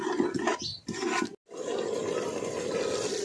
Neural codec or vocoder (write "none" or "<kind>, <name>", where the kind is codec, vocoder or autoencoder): none